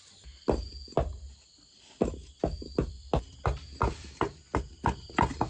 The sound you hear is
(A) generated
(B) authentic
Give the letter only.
B